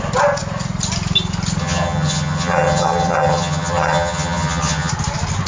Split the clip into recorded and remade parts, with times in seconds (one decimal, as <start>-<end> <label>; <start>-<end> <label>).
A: 0.0-1.6 recorded; 1.6-4.9 remade; 4.9-5.5 recorded

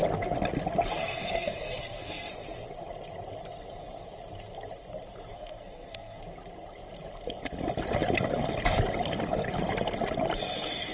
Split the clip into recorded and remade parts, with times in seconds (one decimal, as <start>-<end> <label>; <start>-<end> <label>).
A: 0.0-1.0 recorded; 1.0-2.3 remade; 2.3-5.3 recorded; 5.3-6.2 remade; 6.2-10.9 recorded

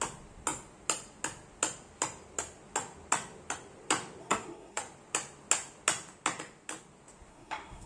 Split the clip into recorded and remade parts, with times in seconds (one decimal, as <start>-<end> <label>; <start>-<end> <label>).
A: 0.0-4.2 recorded; 4.2-4.8 remade; 4.8-7.3 recorded; 7.3-7.9 remade

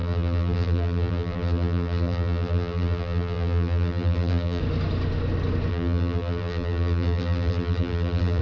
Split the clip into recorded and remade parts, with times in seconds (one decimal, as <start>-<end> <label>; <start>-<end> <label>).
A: 0.0-4.6 remade; 4.6-5.7 recorded; 5.7-8.4 remade

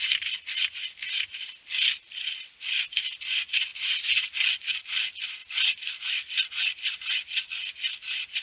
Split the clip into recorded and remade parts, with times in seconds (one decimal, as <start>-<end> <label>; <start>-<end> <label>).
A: 0.0-8.4 recorded

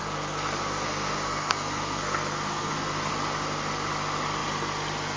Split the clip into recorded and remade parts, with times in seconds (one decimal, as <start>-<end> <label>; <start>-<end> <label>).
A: 0.0-3.1 remade; 3.1-5.2 recorded

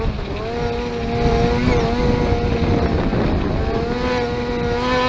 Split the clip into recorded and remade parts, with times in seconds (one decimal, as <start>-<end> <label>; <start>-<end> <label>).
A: 0.0-5.1 recorded

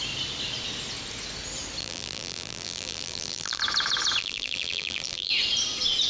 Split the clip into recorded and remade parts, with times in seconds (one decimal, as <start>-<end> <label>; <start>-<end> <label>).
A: 0.0-1.8 recorded; 1.8-3.6 remade; 3.6-4.2 recorded; 4.2-5.3 remade; 5.3-6.1 recorded